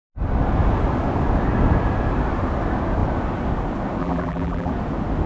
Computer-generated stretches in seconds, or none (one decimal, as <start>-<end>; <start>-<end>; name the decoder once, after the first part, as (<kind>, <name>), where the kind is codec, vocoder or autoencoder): 4.0-4.7 (vocoder, BigVGAN v2)

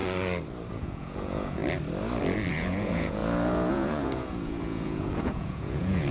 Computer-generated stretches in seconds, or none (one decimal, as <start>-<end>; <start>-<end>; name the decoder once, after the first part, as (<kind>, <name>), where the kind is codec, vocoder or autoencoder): 0.7-1.6 (vocoder, Vocos); 2.5-6.1